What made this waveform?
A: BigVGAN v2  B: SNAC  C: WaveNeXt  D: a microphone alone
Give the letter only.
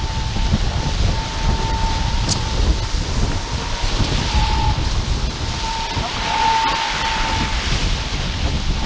D